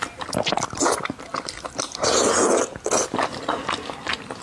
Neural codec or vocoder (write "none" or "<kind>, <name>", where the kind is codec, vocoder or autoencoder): none